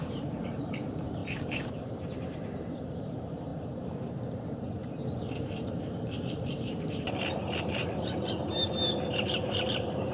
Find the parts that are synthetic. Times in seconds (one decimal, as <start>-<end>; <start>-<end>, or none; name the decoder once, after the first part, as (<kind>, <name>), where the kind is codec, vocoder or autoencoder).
0.0-8.6 (vocoder, BigVGAN v2); 9.1-10.1